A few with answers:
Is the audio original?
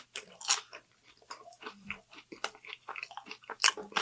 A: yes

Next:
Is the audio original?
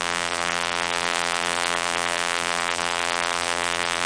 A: no